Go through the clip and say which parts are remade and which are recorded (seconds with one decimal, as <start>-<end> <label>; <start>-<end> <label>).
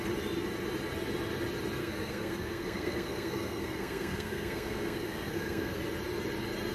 0.0-1.8 recorded; 1.8-5.8 remade; 5.8-6.7 recorded